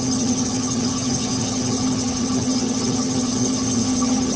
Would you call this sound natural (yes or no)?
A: no